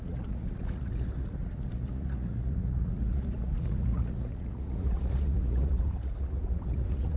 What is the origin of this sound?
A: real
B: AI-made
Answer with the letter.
B